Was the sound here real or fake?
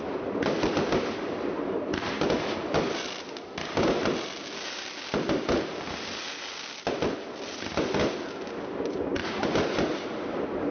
real